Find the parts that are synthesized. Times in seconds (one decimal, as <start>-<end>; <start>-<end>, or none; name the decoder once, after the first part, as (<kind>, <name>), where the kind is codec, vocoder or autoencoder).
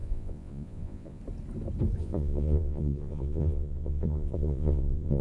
0.0-1.2 (vocoder, Vocos); 2.0-5.2